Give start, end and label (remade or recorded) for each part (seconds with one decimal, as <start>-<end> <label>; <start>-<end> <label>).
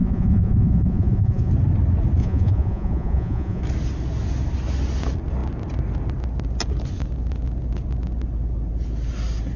0.0-1.5 remade; 1.5-2.2 recorded; 2.2-3.6 remade; 3.6-9.6 recorded